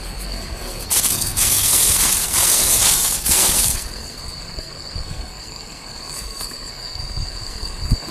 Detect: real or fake fake